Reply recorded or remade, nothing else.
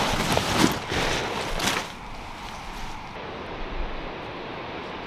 recorded